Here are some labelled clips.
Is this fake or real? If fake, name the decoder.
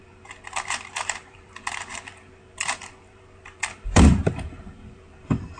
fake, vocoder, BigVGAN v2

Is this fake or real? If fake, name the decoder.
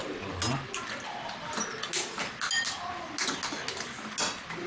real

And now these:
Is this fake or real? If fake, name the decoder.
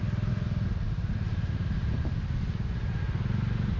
real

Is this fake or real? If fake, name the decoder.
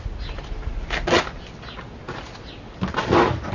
real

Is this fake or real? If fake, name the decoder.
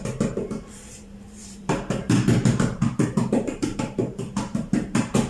fake, vocoder, BigVGAN v2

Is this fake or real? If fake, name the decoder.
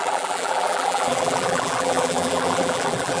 fake, vocoder, BigVGAN v2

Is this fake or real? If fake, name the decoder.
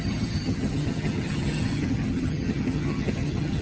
fake, vocoder, HiFi-GAN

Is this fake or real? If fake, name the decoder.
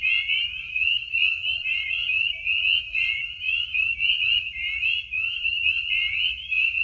fake, vocoder, Vocos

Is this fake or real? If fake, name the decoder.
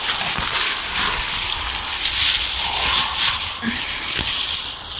real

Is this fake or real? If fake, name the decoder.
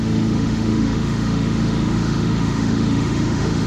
fake, autoencoder, DAC-VAE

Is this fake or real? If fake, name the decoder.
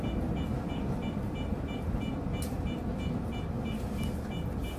real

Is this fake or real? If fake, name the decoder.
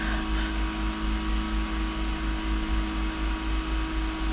real